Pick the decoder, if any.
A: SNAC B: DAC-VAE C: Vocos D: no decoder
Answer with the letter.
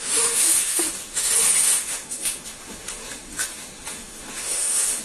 B